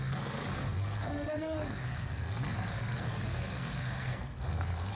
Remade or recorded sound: remade